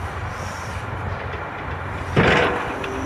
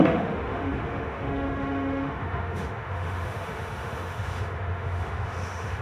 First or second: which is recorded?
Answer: first